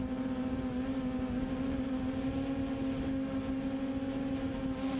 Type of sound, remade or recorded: recorded